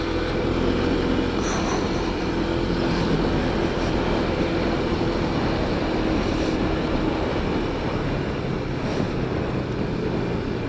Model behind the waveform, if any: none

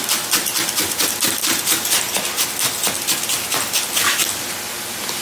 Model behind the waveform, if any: none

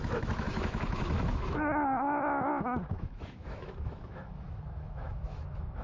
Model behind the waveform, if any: autoencoder, DAC-VAE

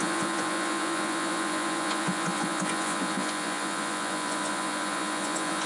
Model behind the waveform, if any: vocoder, Vocos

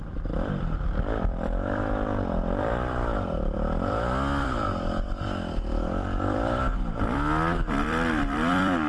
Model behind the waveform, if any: vocoder, BigVGAN v2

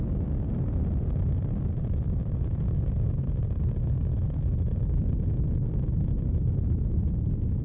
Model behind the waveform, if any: none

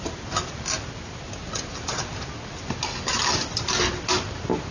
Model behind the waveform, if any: none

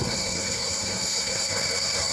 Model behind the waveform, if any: codec, SNAC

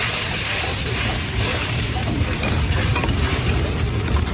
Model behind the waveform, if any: vocoder, BigVGAN v2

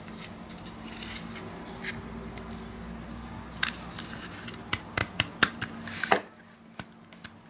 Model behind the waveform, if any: none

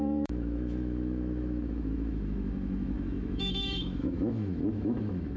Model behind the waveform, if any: autoencoder, DAC-VAE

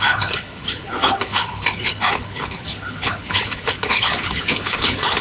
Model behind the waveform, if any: codec, HILCodec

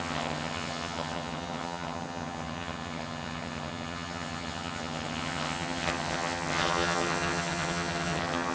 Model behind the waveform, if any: vocoder, HiFi-GAN